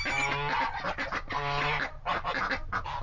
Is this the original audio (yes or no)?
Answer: yes